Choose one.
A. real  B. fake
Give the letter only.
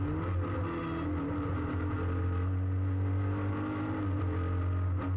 A